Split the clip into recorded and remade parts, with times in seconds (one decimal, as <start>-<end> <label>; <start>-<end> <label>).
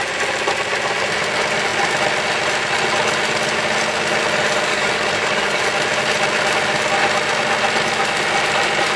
0.0-4.7 recorded; 4.7-5.6 remade; 5.6-9.0 recorded